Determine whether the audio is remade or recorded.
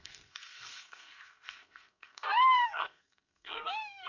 remade